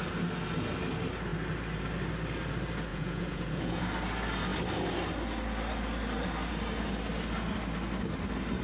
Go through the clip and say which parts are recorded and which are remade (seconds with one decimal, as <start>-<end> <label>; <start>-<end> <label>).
0.0-2.9 recorded; 2.9-3.8 remade; 3.8-8.6 recorded

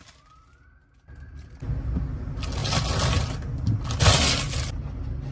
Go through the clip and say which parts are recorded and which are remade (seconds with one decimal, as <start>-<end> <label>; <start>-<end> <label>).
0.0-5.3 recorded

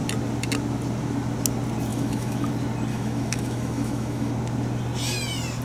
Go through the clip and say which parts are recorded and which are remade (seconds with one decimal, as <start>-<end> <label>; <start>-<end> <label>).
0.0-1.9 recorded; 1.9-2.5 remade; 2.5-2.9 recorded; 2.9-4.3 remade; 4.3-5.6 recorded

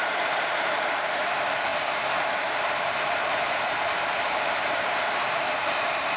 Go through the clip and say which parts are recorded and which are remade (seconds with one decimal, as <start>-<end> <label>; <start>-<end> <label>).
0.0-6.2 remade

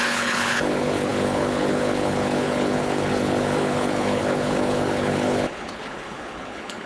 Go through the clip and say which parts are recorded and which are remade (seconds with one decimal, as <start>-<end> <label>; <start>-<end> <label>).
0.0-6.9 remade

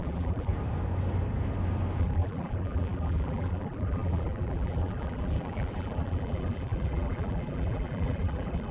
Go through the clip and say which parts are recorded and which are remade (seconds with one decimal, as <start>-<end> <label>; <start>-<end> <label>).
0.0-0.5 remade; 0.5-2.0 recorded; 2.0-8.7 remade